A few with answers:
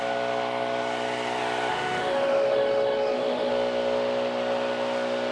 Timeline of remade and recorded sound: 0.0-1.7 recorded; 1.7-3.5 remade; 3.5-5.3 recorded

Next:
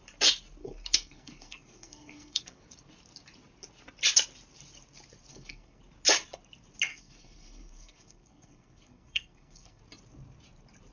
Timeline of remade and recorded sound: 0.0-0.6 recorded; 0.6-2.6 remade; 2.6-5.3 recorded; 5.3-5.8 remade; 5.8-6.9 recorded; 6.9-9.8 remade; 9.8-10.9 recorded